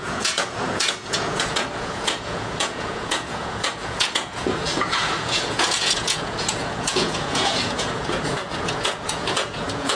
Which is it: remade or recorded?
remade